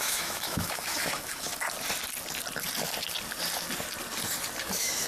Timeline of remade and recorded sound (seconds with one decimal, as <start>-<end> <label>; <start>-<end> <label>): 0.0-1.5 remade; 1.5-4.6 recorded; 4.6-5.1 remade